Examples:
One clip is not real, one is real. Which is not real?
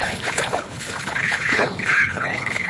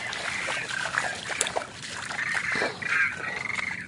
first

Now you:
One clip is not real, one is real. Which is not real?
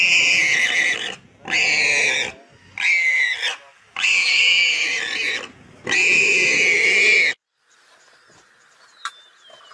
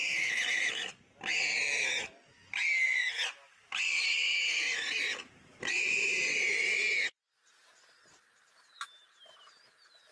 second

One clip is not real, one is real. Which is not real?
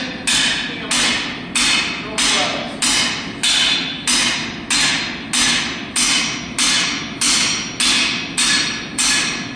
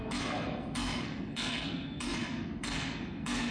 second